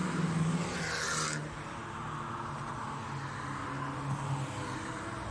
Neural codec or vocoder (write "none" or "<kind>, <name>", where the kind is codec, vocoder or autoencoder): none